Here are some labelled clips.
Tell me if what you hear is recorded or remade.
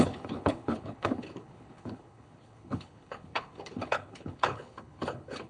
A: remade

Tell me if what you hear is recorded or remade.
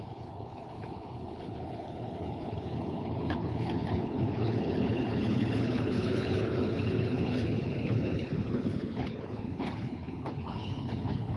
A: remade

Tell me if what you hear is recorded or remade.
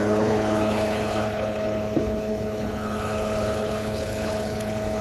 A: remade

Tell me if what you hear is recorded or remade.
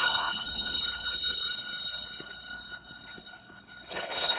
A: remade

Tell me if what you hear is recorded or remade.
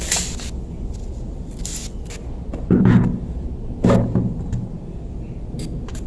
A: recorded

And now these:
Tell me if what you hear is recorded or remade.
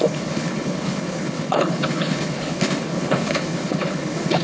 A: remade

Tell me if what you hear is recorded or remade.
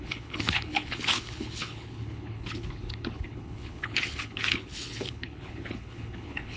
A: remade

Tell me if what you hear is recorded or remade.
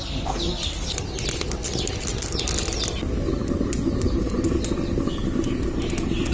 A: recorded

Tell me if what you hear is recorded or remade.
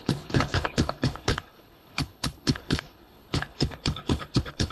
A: remade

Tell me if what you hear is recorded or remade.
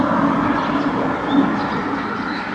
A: recorded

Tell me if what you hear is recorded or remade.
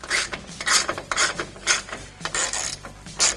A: recorded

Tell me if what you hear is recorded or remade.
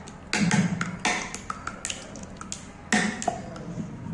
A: recorded